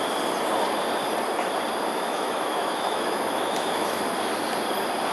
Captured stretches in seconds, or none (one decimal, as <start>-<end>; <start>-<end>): 0.0-1.9; 4.0-5.1